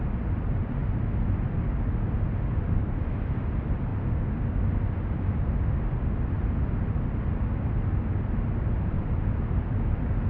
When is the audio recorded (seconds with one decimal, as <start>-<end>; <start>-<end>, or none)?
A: 0.8-2.5; 3.9-8.7